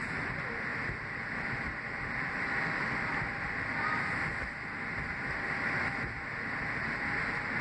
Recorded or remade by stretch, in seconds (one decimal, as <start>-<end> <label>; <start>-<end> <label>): 0.0-7.6 recorded